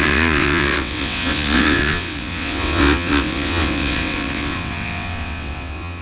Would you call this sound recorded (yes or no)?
no